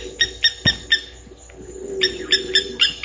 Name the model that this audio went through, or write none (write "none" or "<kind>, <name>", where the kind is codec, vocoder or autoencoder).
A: none